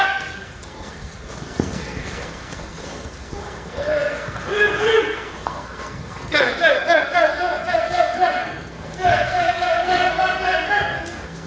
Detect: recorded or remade remade